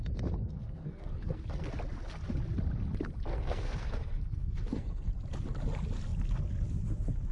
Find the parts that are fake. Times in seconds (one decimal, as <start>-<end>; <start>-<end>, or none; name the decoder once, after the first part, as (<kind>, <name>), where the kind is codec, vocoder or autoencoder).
0.4-1.7 (codec, SNAC); 3.3-5.1